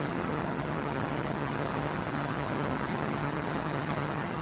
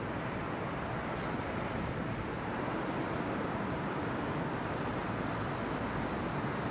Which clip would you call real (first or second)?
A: second